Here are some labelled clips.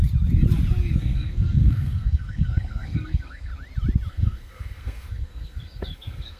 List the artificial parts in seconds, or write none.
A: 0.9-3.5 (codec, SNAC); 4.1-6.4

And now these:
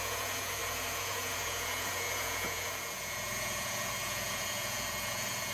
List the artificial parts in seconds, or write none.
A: 0.0-5.5 (vocoder, Vocos)

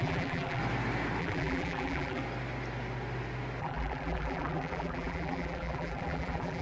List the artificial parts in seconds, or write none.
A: 0.0-0.6 (vocoder, BigVGAN v2); 1.2-2.2; 3.6-6.6

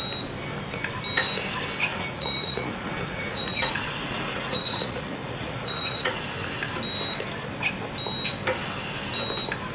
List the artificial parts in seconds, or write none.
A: 1.9-6.2 (vocoder, Vocos)

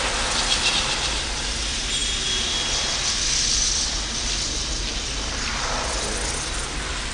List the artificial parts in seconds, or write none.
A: none

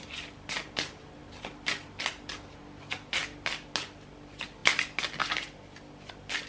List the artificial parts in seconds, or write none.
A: none

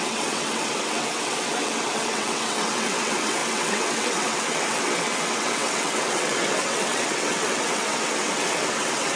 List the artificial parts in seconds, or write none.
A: 0.0-9.2 (vocoder, WaveNeXt)